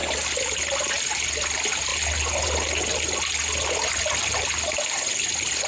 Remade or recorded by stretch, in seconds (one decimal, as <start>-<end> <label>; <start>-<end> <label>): 0.0-5.7 recorded